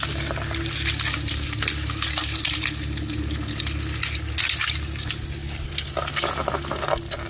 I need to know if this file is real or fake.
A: real